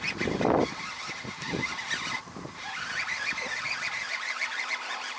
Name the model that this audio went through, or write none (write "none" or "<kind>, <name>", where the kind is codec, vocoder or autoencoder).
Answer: none